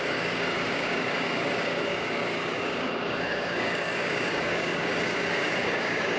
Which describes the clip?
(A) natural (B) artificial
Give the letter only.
B